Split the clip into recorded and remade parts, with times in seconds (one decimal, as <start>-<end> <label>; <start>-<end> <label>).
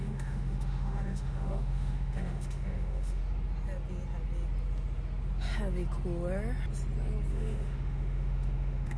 0.0-3.2 remade; 3.2-7.3 recorded; 7.3-9.0 remade